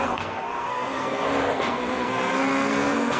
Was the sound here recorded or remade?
remade